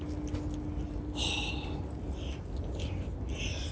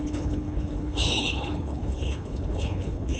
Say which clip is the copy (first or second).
second